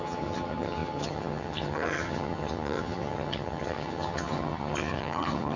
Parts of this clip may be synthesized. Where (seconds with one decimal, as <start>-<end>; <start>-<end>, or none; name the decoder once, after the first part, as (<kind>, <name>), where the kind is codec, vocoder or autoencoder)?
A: 0.0-5.6 (vocoder, HiFi-GAN)